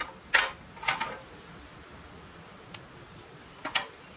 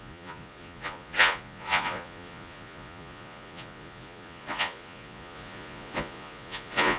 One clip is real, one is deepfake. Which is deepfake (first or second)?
second